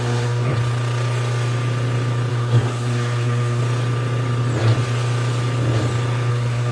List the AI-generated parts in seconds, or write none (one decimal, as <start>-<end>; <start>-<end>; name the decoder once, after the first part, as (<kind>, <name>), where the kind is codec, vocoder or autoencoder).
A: 0.0-0.5 (codec, SNAC); 2.3-3.6; 6.3-6.7